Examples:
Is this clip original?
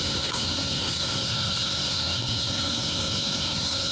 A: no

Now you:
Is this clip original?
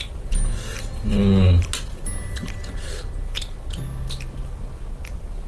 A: yes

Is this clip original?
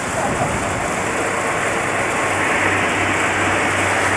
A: yes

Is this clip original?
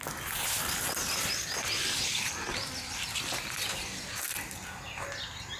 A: yes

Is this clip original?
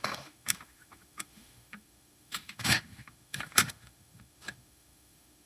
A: no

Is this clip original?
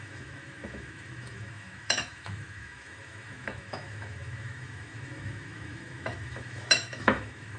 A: no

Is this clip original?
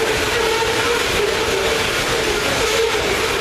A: yes